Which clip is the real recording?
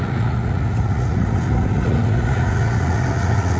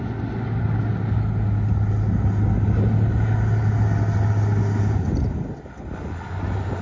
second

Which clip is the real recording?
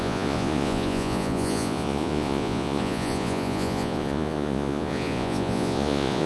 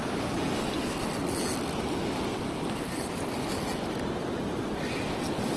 second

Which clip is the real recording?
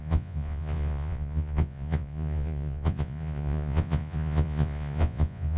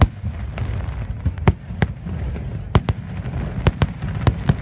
second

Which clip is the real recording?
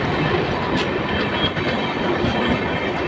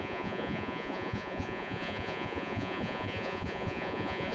first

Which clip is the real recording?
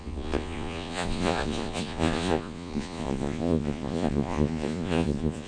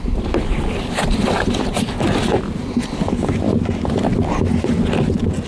second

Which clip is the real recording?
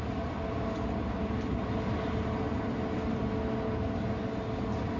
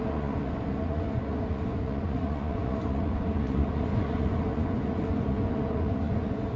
first